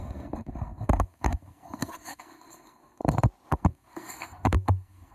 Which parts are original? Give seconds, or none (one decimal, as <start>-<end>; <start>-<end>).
3.0-3.5